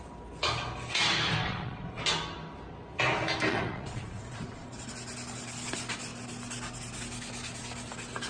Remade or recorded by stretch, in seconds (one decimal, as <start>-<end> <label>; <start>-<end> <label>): 0.0-1.4 recorded; 1.4-2.0 remade; 2.0-3.5 recorded; 3.5-4.9 remade; 4.9-8.3 recorded